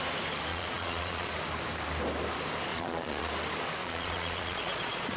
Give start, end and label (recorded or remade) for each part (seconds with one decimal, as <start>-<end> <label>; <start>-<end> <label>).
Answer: 0.0-0.5 recorded; 0.5-1.3 remade; 1.3-2.7 recorded; 2.7-3.3 remade; 3.3-3.8 recorded; 3.8-5.2 remade